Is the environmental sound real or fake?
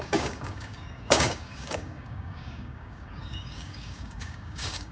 fake